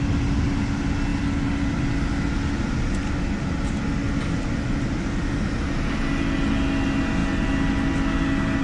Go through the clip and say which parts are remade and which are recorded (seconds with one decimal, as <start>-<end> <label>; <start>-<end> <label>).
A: 0.0-8.6 recorded